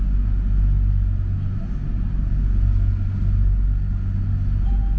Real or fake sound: real